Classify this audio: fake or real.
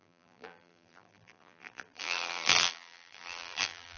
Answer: fake